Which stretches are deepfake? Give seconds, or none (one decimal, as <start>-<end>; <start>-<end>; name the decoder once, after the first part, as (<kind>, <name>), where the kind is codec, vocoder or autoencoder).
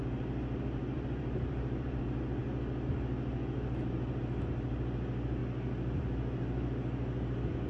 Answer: 0.8-2.0 (vocoder, BigVGAN v2)